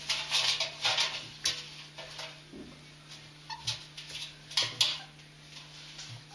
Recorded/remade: recorded